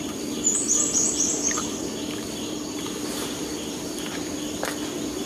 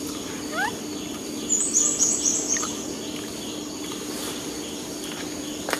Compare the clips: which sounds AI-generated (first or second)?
first